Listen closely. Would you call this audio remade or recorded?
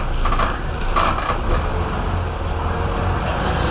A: recorded